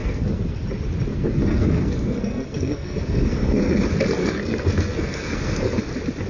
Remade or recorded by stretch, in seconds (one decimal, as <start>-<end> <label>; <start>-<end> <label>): 0.0-0.6 remade; 0.6-1.1 recorded; 1.1-3.8 remade; 3.8-4.2 recorded; 4.2-5.8 remade; 5.8-6.3 recorded